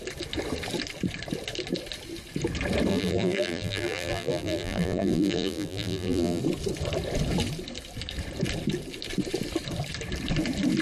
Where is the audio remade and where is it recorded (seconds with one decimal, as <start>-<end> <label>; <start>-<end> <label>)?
0.0-2.9 recorded; 2.9-6.4 remade; 6.4-10.8 recorded